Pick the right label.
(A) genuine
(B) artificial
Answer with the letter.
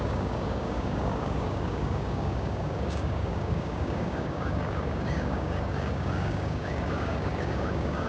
B